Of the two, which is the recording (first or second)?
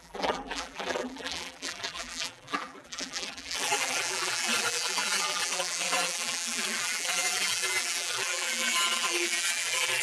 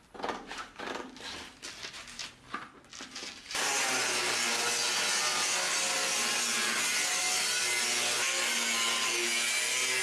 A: second